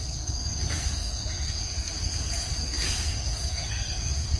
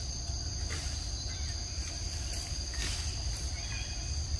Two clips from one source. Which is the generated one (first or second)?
first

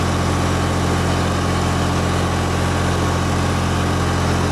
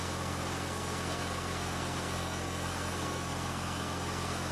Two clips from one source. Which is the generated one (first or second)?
second